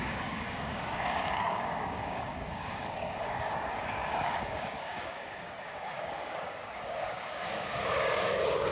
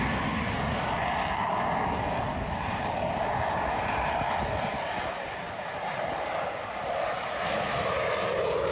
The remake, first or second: first